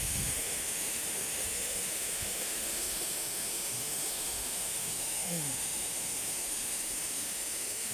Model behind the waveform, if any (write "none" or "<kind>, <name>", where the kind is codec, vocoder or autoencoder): autoencoder, DAC-VAE